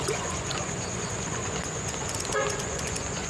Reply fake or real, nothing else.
fake